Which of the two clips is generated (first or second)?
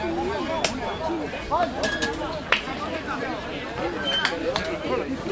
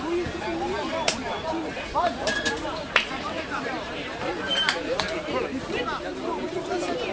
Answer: second